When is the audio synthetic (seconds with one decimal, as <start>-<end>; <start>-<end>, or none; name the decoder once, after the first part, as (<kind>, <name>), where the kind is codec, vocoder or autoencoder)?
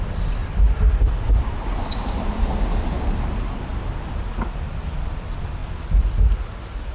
0.4-1.5 (vocoder, BigVGAN v2)